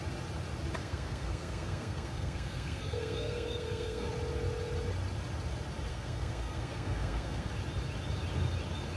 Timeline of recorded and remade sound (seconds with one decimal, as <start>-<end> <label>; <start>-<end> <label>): 0.0-0.8 recorded; 0.8-4.1 remade; 4.1-5.9 recorded; 5.9-7.5 remade; 7.5-9.0 recorded

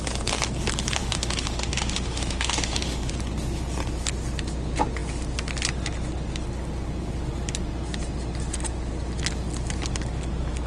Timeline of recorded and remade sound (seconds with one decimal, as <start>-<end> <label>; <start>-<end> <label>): 0.0-1.0 recorded; 1.0-3.1 remade; 3.1-10.7 recorded